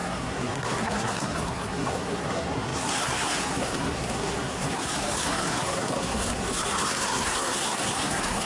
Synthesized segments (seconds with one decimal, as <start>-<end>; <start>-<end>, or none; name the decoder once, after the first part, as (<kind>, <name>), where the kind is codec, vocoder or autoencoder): 0.0-8.4 (codec, SNAC)